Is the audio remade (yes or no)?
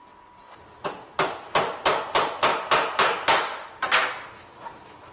no